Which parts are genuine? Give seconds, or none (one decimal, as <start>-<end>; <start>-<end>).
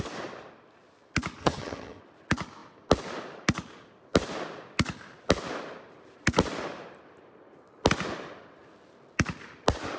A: 0.0-1.4; 2.0-10.0